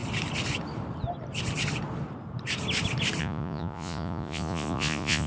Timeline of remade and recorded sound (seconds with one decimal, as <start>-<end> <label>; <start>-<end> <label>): 0.0-3.2 recorded; 3.2-5.3 remade